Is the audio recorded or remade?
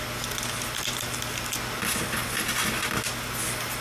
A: recorded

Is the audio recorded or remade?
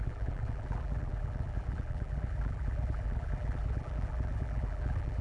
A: remade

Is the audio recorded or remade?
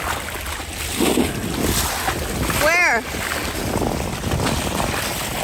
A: recorded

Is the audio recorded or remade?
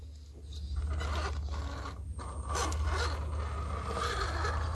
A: recorded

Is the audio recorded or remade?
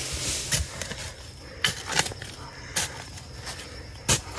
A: recorded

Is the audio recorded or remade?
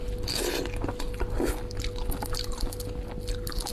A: recorded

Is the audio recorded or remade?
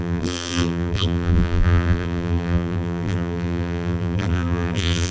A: remade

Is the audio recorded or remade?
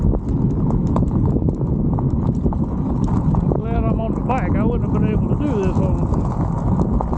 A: recorded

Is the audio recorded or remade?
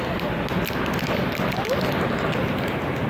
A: recorded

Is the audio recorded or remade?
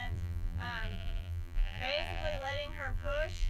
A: remade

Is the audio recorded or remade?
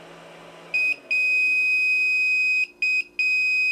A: recorded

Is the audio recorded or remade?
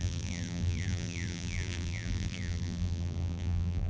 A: remade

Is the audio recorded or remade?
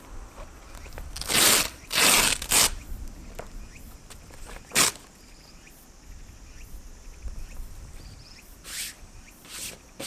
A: remade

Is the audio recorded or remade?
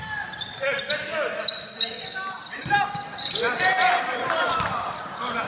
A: recorded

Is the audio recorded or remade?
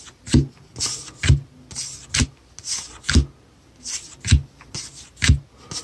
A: recorded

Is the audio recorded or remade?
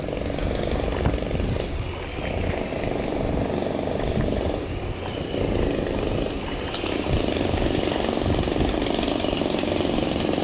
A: recorded